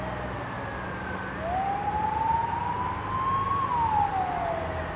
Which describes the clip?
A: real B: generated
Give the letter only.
A